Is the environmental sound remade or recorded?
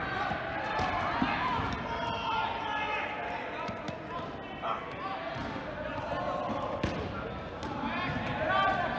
recorded